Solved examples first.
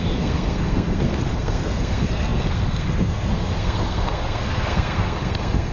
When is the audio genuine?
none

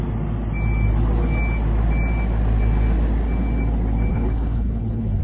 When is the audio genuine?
0.0-4.1

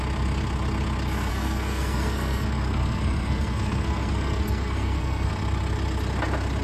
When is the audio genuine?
0.0-1.3; 5.3-6.6

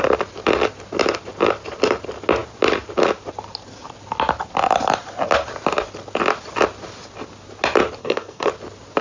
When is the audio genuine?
0.0-8.0; 8.5-9.0

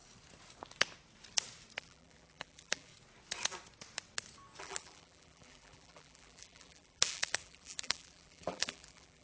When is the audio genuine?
0.0-1.8; 2.9-4.6

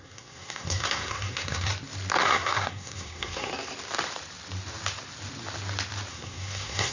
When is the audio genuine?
1.7-2.2; 3.5-6.1

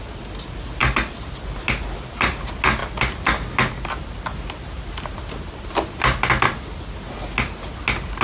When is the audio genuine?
0.0-8.2

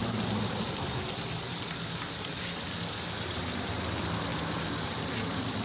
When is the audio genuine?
0.0-5.6